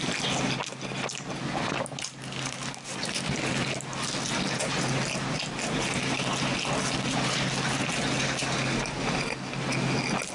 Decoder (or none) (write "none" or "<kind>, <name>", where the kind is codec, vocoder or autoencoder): none